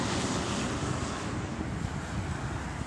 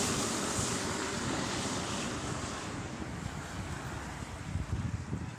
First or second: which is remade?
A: second